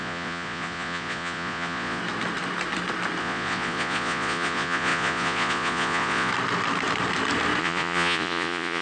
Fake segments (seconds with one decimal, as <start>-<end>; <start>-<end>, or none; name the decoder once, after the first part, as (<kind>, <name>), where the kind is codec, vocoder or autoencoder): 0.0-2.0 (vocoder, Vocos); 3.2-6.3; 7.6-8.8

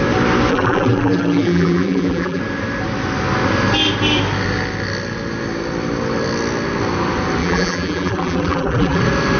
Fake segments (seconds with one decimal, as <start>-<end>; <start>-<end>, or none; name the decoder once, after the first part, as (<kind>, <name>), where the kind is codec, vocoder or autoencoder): 0.5-2.4 (vocoder, BigVGAN v2); 7.4-9.0

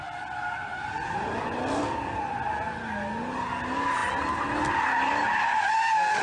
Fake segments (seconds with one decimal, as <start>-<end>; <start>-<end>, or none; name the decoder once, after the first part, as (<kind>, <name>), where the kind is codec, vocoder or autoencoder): none